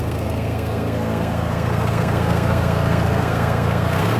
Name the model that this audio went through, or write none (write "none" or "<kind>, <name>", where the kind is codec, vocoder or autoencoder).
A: codec, SNAC